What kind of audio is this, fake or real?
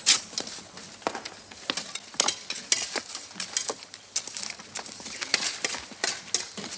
real